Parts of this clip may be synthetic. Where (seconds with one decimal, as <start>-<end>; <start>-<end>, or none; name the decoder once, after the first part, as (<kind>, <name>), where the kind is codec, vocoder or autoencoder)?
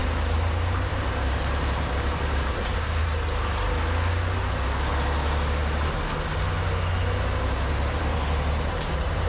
0.0-3.1 (vocoder, BigVGAN v2); 7.7-9.3